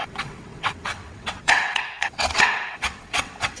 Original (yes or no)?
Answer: no